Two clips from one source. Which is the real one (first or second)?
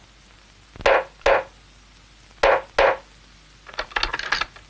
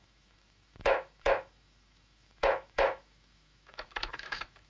first